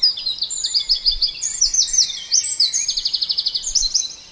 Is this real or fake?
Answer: real